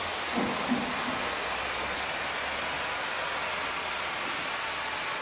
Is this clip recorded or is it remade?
recorded